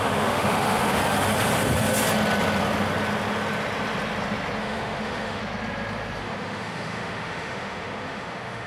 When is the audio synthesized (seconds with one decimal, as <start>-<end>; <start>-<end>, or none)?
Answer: 0.0-1.0; 4.6-5.4; 6.2-8.7